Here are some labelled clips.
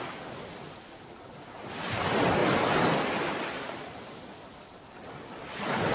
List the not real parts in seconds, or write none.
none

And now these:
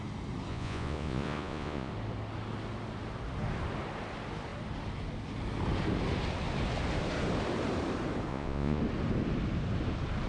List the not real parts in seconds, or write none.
0.5-1.9 (vocoder, Vocos); 8.3-8.8

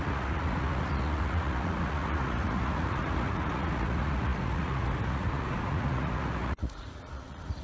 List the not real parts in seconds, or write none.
0.0-7.6 (vocoder, Vocos)

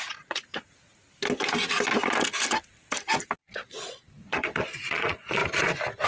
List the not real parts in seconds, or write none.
0.0-0.5 (vocoder, Vocos); 3.4-5.4

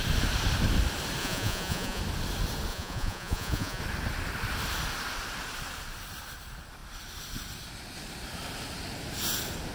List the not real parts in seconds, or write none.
1.2-2.0 (vocoder, Vocos); 2.7-3.8

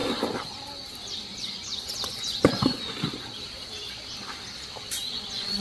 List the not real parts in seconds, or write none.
1.3-3.1 (vocoder, Vocos); 5.0-5.6

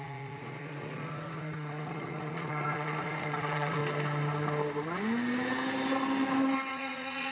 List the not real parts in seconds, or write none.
0.0-3.8 (vocoder, Vocos); 6.7-7.3